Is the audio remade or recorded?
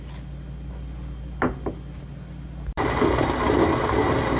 recorded